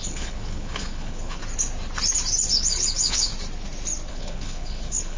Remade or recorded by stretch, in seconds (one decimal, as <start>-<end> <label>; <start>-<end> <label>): 0.0-1.4 remade; 1.4-2.5 recorded; 2.5-3.3 remade; 3.3-4.1 recorded; 4.1-5.2 remade